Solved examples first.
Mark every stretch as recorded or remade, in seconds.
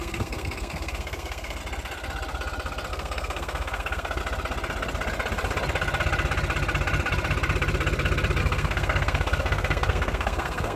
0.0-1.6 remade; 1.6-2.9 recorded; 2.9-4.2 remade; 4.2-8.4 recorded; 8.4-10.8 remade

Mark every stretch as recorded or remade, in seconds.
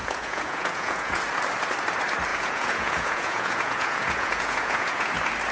0.0-1.2 remade; 1.2-2.3 recorded; 2.3-5.1 remade; 5.1-5.5 recorded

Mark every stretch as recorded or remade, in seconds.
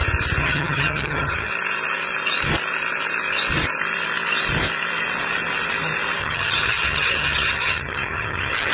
0.0-0.4 recorded; 0.4-1.5 remade; 1.5-6.2 recorded; 6.2-8.7 remade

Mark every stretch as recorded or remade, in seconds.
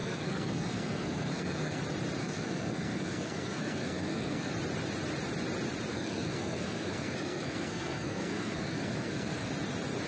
0.0-1.8 remade; 1.8-2.2 recorded; 2.2-4.5 remade; 4.5-5.9 recorded; 5.9-9.5 remade; 9.5-10.1 recorded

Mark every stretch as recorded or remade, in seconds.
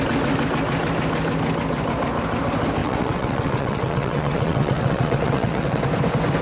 0.0-2.8 recorded; 2.8-5.8 remade; 5.8-6.4 recorded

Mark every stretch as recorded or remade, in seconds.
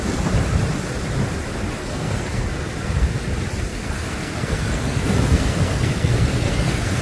0.0-1.8 recorded; 1.8-3.2 remade; 3.2-3.7 recorded; 3.7-7.0 remade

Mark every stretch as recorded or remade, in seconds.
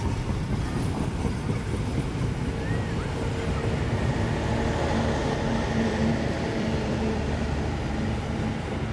0.0-5.2 recorded; 5.2-8.4 remade; 8.4-8.9 recorded